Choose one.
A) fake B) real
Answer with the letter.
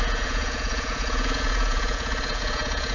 A